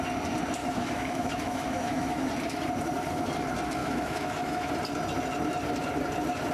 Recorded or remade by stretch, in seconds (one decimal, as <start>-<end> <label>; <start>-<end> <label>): 0.0-0.6 recorded; 0.6-2.3 remade; 2.3-3.8 recorded; 3.8-4.7 remade; 4.7-6.5 recorded